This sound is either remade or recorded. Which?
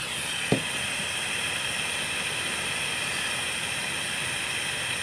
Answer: recorded